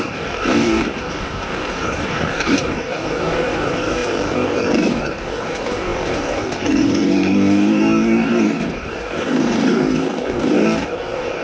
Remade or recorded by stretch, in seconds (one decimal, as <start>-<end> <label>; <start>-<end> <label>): 0.0-11.4 remade